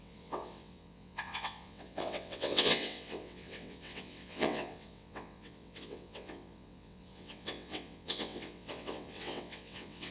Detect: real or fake fake